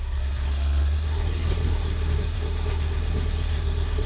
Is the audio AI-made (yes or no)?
yes